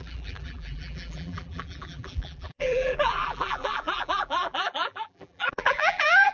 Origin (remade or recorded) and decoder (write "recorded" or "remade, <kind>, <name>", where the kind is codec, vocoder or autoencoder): remade, vocoder, BigVGAN v2